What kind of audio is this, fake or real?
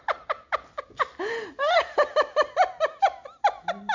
real